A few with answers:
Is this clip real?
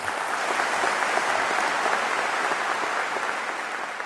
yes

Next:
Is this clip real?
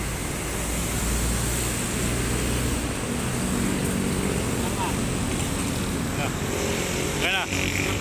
yes